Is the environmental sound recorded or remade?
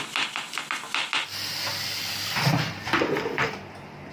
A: recorded